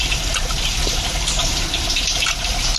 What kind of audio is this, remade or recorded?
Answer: recorded